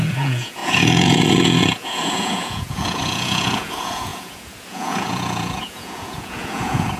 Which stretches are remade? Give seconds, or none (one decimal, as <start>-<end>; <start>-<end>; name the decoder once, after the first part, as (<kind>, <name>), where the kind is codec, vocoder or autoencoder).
0.0-7.0 (vocoder, Vocos)